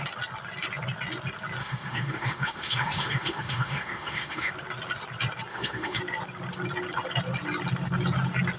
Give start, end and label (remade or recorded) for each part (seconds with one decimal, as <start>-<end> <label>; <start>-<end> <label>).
0.0-1.6 recorded; 1.6-4.5 remade; 4.5-5.5 recorded; 5.5-6.0 remade; 6.0-8.6 recorded